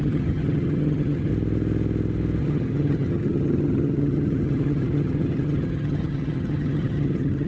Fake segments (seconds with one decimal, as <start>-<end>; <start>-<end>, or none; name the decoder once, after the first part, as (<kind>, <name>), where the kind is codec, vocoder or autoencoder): 0.0-1.3 (vocoder, HiFi-GAN); 2.4-7.5